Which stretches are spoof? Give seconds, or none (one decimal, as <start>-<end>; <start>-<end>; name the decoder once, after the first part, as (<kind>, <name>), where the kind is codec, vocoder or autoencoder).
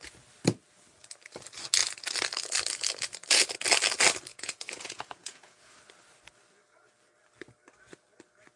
4.3-5.7 (vocoder, Vocos)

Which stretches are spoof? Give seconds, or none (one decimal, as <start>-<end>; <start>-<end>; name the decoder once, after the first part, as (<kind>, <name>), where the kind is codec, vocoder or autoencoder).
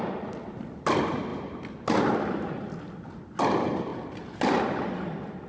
none